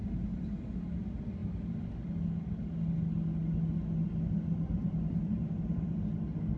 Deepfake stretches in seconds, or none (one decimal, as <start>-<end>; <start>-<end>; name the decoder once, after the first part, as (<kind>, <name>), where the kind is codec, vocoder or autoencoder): 4.7-5.5 (vocoder, BigVGAN v2)